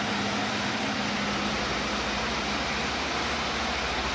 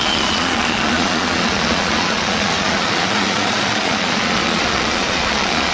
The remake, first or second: second